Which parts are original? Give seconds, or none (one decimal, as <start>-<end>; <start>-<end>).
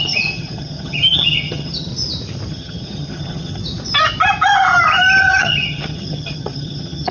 1.9-2.5; 3.6-5.2